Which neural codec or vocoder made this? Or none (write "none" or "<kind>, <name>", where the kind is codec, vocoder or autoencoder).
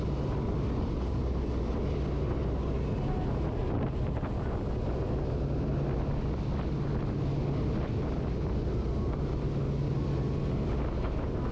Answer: none